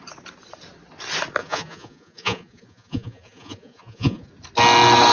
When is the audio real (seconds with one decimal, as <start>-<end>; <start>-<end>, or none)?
0.0-1.4; 4.3-5.1